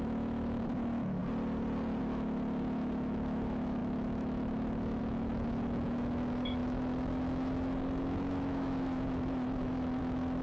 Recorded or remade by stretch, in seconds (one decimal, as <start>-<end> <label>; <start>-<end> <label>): 0.0-1.2 remade; 1.2-2.0 recorded; 2.0-10.4 remade